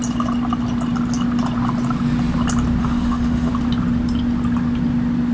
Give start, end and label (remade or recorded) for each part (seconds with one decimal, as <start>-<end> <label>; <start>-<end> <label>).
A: 0.0-2.8 recorded; 2.8-3.5 remade; 3.5-5.3 recorded